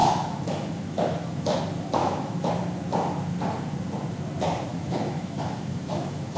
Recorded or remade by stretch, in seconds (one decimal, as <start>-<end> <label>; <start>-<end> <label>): 0.0-1.6 remade; 1.6-2.0 recorded; 2.0-2.5 remade; 2.5-4.7 recorded; 4.7-6.4 remade